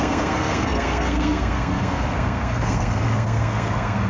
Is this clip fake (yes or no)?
yes